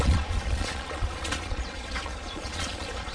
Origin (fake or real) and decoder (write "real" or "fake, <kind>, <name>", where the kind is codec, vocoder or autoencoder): fake, vocoder, Vocos